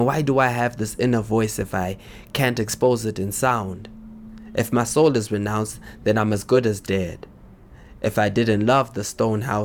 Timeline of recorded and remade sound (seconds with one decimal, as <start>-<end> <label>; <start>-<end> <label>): 0.0-6.0 recorded; 6.0-7.6 remade; 7.6-9.6 recorded

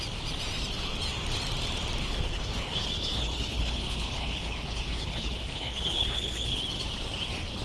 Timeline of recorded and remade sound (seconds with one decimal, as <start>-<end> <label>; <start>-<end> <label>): 0.0-2.0 recorded; 2.0-6.6 remade; 6.6-7.6 recorded